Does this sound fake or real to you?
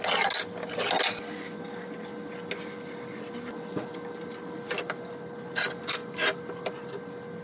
real